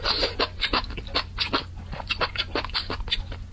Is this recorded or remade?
recorded